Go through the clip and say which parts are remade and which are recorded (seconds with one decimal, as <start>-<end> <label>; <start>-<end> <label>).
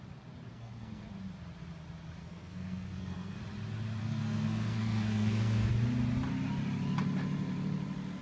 0.0-0.5 recorded; 0.5-1.1 remade; 1.1-2.2 recorded; 2.2-3.4 remade; 3.4-4.0 recorded; 4.0-5.7 remade; 5.7-8.2 recorded